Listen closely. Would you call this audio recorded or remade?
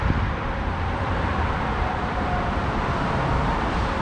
remade